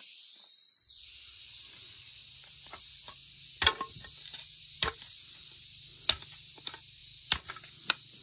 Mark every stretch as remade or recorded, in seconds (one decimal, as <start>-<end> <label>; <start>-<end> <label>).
0.0-2.2 remade; 2.2-4.6 recorded; 4.6-5.9 remade; 5.9-6.5 recorded; 6.5-8.2 remade